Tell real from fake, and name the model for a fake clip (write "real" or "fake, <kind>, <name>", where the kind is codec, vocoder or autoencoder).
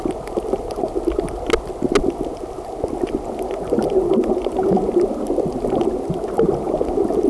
real